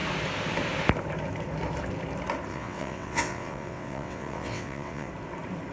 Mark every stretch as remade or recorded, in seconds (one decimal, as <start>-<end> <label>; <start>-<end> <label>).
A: 0.0-2.5 recorded; 2.5-5.1 remade; 5.1-5.7 recorded